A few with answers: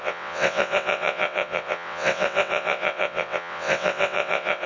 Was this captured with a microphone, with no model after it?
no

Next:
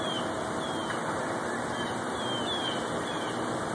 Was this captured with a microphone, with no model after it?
yes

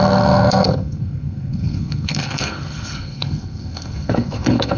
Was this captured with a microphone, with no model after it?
no